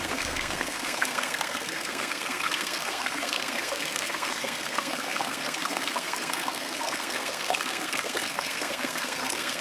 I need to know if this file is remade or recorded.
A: remade